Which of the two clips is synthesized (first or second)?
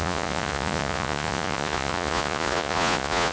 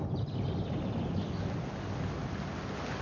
first